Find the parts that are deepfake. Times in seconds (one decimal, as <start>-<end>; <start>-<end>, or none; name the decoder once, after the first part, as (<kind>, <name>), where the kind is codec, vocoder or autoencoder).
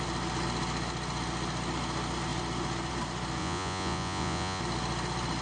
3.4-4.6 (vocoder, Vocos)